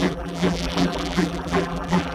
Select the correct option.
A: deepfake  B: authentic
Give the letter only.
A